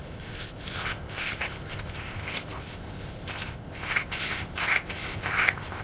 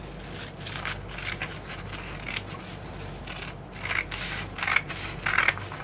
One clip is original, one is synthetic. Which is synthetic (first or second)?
first